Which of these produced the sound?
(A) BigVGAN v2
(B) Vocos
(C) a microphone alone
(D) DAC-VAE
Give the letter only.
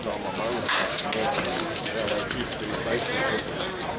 C